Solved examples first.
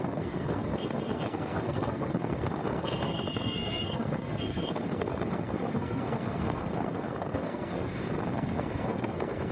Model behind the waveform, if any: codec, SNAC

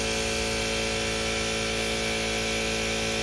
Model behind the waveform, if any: none